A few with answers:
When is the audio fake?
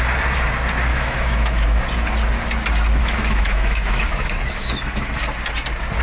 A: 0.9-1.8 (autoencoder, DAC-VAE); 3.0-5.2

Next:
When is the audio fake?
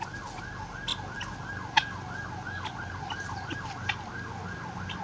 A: none